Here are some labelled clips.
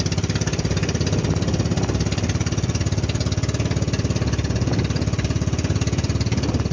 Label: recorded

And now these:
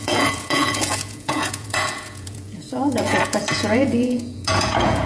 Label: remade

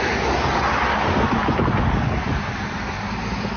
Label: recorded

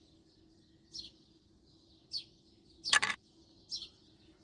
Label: recorded